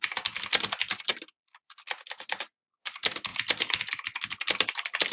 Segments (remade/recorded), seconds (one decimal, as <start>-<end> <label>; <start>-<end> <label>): 0.0-1.1 recorded; 1.1-1.7 remade; 1.7-3.3 recorded; 3.3-3.8 remade; 3.8-5.1 recorded